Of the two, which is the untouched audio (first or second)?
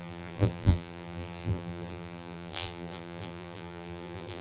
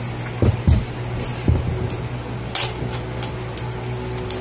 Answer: second